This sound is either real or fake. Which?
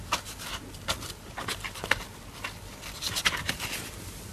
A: fake